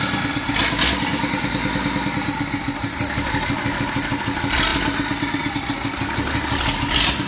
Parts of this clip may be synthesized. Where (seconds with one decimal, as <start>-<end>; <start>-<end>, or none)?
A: none

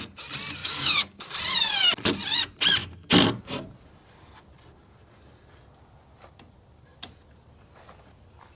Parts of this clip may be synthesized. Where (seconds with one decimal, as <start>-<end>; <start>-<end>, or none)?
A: 0.6-1.2

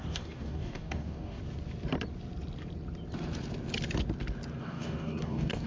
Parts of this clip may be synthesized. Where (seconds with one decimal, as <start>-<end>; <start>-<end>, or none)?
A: 0.0-1.4; 4.6-5.7

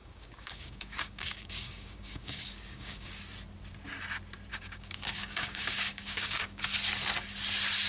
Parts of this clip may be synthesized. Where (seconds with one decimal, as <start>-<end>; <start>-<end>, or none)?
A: 0.0-3.2; 4.5-6.6